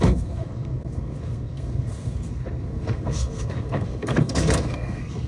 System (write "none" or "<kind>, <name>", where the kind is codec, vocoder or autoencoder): codec, SNAC